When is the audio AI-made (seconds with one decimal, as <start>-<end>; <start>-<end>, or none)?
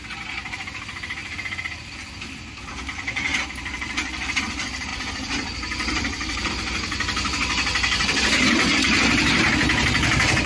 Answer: none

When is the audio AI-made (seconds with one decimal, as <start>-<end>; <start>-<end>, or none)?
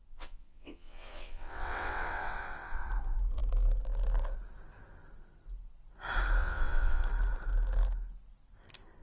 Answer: 0.0-2.9; 6.4-7.0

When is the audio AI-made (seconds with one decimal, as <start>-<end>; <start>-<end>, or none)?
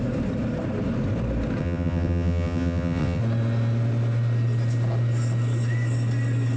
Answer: 1.6-3.2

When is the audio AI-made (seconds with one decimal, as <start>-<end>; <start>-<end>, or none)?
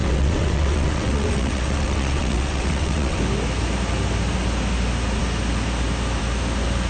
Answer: 0.0-3.2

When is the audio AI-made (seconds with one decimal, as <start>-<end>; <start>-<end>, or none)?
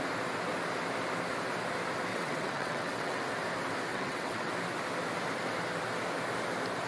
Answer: 2.1-3.2; 3.9-4.5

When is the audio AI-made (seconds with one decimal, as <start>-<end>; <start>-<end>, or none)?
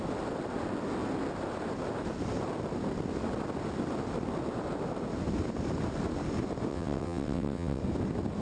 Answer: 6.7-7.8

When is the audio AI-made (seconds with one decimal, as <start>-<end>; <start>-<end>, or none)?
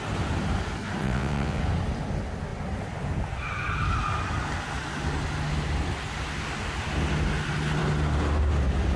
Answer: 1.0-1.6